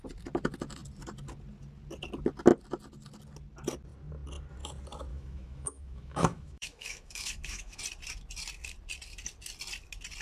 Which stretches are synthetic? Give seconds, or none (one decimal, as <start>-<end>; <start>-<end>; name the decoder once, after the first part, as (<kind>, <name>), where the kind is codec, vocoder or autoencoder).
5.1-7.8 (autoencoder, DAC-VAE)